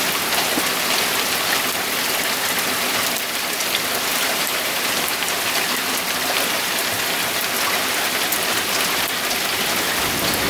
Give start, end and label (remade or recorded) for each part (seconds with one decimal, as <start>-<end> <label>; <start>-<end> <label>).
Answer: 0.0-4.1 recorded; 4.1-5.4 remade; 5.4-10.5 recorded